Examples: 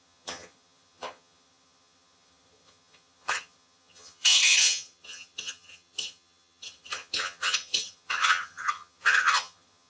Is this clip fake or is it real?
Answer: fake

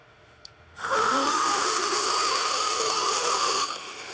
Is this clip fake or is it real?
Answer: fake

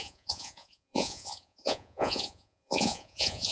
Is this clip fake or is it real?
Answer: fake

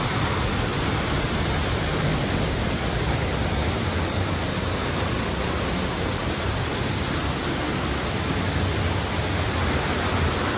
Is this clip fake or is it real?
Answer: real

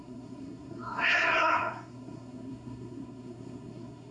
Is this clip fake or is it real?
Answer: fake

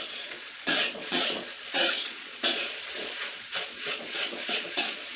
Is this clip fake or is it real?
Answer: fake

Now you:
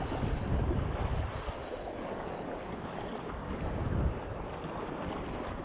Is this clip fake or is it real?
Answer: real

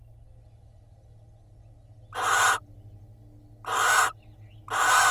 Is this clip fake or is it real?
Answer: real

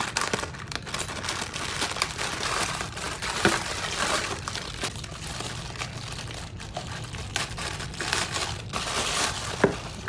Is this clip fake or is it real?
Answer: real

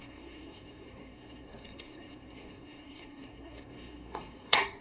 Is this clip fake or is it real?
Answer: fake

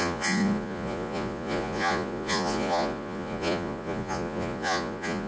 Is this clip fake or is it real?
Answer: fake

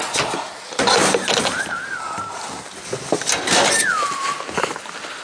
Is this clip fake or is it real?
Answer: real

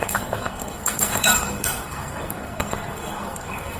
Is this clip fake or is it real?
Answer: fake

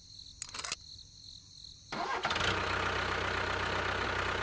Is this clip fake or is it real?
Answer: real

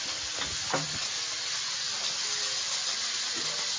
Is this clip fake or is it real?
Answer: real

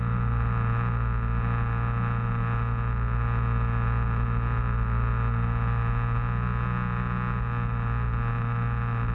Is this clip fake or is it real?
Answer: real